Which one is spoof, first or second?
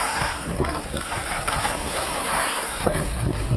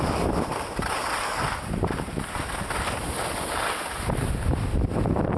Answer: first